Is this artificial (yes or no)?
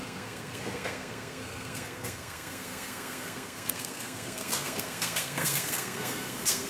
yes